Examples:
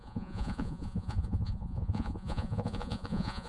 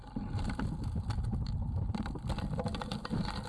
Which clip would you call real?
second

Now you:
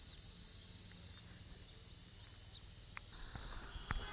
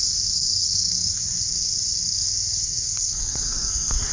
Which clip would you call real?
first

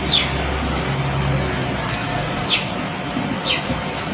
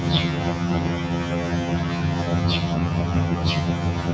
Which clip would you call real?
first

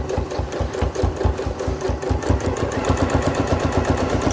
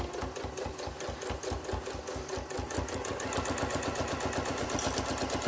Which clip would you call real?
second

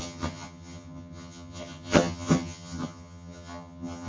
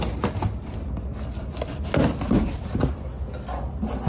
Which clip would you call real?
second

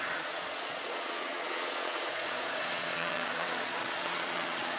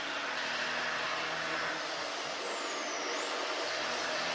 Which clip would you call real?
second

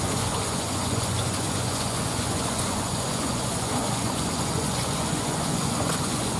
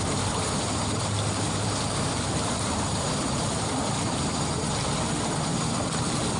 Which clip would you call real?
second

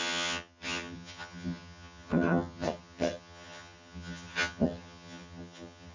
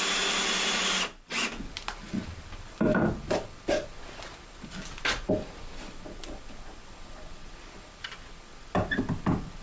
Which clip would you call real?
second